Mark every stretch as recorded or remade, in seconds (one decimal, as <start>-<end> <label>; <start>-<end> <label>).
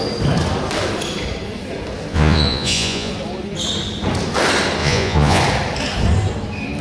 0.0-2.1 recorded; 2.1-3.1 remade; 3.1-4.8 recorded; 4.8-5.4 remade; 5.4-6.8 recorded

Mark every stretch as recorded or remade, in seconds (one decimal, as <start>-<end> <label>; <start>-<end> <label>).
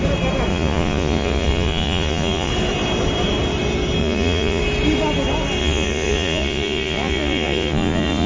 0.0-0.5 recorded; 0.5-2.5 remade; 2.5-4.0 recorded; 4.0-4.6 remade; 4.6-5.6 recorded; 5.6-8.3 remade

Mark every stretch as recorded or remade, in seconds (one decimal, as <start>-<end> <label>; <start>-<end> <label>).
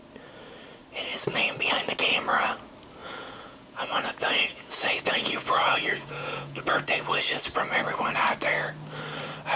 0.0-3.0 recorded; 3.0-7.2 remade; 7.2-9.6 recorded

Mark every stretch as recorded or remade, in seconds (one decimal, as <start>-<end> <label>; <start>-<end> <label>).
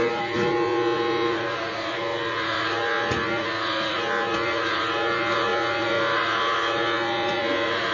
0.0-7.9 remade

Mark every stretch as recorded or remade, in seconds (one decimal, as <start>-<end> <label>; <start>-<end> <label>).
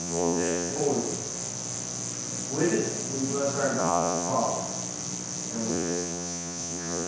0.0-0.7 remade; 0.7-3.8 recorded; 3.8-4.3 remade; 4.3-5.7 recorded; 5.7-7.1 remade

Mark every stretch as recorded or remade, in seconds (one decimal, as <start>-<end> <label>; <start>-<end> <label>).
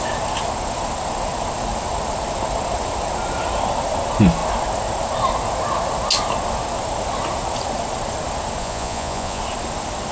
0.0-8.6 recorded; 8.6-9.4 remade; 9.4-10.1 recorded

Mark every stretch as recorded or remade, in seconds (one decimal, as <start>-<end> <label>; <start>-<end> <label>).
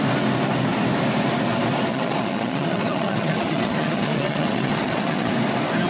0.0-1.9 recorded; 1.9-5.3 remade; 5.3-5.9 recorded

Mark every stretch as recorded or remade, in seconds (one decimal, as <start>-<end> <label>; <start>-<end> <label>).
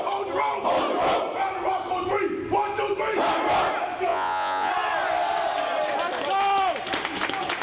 0.0-4.1 recorded; 4.1-4.7 remade; 4.7-7.6 recorded